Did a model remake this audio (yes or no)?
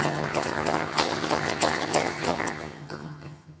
yes